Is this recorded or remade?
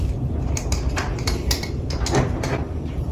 recorded